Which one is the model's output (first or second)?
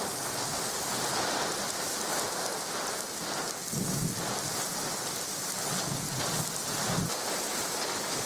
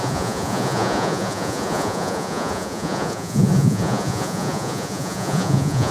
second